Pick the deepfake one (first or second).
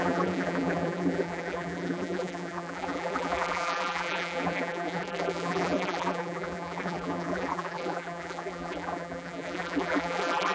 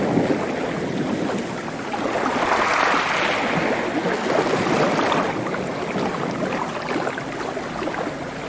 first